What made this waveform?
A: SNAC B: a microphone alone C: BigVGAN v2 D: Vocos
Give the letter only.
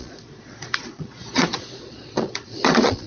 D